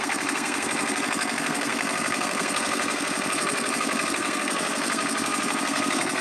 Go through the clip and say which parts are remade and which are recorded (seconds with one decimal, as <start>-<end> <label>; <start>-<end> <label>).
0.0-6.2 remade